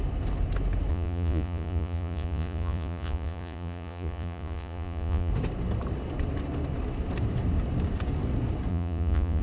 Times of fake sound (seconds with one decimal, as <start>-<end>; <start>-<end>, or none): 0.9-5.3; 8.7-9.4